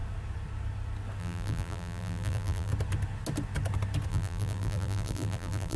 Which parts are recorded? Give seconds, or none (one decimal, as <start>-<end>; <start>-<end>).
0.0-1.2; 2.7-4.1